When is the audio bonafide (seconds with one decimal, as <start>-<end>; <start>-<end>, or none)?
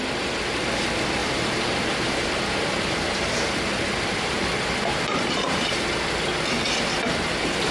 0.0-1.2; 5.7-7.7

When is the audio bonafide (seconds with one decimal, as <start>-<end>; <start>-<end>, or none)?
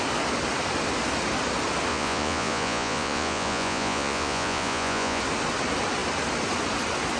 0.0-1.9; 5.2-7.2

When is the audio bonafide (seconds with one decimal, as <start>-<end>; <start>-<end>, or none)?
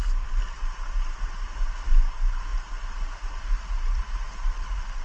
0.0-5.0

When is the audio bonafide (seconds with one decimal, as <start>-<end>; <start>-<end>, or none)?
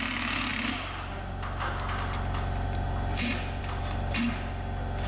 0.0-5.1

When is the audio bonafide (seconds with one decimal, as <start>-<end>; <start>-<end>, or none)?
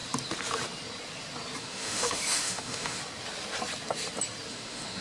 0.0-1.6; 3.0-4.5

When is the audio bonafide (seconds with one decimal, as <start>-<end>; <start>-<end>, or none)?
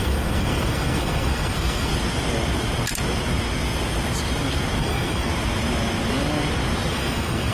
1.9-4.8; 5.3-6.9